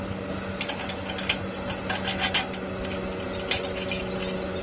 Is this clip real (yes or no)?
yes